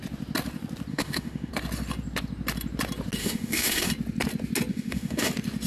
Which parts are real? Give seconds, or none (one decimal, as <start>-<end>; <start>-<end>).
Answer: 0.0-0.9; 1.5-3.2; 3.9-4.7; 5.3-5.7